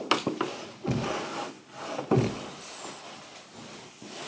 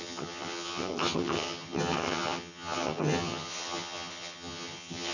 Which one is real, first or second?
first